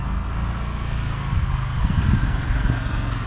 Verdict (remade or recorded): remade